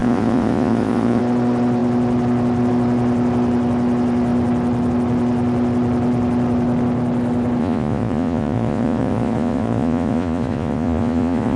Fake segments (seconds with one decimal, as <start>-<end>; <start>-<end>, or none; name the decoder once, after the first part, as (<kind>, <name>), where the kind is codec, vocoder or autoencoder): 0.0-1.2 (vocoder, Vocos); 7.6-11.6